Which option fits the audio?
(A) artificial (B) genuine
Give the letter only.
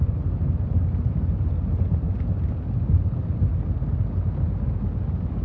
B